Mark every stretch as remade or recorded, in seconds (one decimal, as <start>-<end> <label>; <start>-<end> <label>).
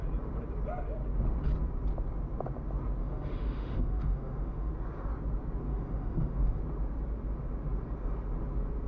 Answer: 0.0-3.0 recorded; 3.0-4.7 remade; 4.7-5.7 recorded; 5.7-6.6 remade; 6.6-8.9 recorded